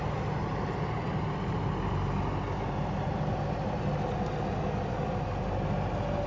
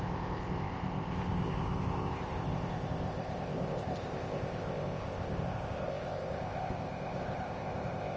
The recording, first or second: first